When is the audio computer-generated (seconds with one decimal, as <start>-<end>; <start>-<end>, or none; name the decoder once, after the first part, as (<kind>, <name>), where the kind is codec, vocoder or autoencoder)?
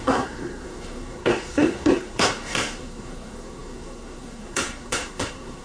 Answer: 0.0-5.6 (codec, SNAC)